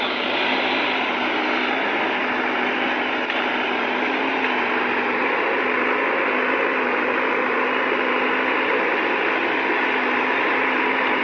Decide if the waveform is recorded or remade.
remade